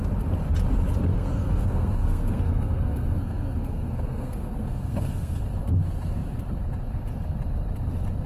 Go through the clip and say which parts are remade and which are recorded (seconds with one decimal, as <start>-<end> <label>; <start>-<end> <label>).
0.0-1.1 recorded; 1.1-5.4 remade; 5.4-8.3 recorded

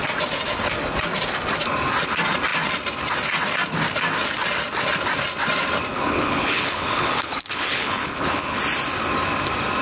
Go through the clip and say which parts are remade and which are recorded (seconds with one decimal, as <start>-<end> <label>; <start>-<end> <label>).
0.0-5.9 recorded; 5.9-8.6 remade; 8.6-9.8 recorded